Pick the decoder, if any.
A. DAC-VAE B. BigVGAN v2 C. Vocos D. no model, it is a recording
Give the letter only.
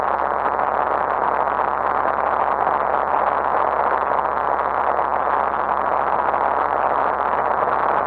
D